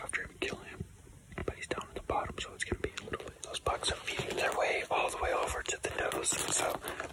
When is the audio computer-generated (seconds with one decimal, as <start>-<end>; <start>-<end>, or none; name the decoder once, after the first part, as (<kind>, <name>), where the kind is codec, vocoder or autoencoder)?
5.4-6.0 (vocoder, BigVGAN v2)